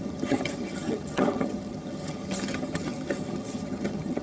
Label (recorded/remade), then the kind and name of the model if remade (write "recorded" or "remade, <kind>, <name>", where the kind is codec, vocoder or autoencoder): remade, vocoder, HiFi-GAN